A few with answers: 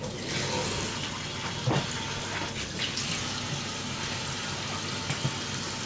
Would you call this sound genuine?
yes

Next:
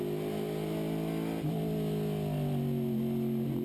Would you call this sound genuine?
yes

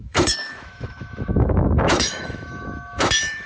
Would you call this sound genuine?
no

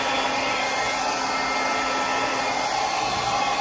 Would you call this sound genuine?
yes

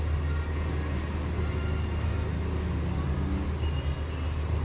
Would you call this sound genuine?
yes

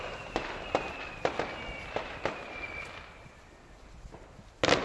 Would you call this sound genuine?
yes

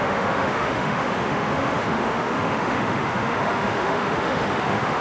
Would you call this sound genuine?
no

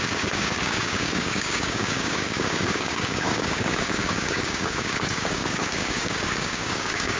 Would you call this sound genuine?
no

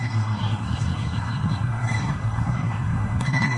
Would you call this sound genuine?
no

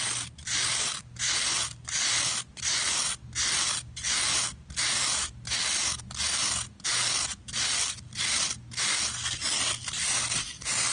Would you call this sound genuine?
yes